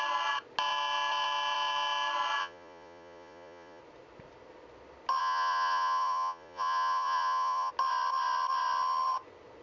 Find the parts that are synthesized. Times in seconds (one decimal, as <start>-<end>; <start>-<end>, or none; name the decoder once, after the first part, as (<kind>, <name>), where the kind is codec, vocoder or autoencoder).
2.4-3.8 (vocoder, Vocos); 5.2-7.7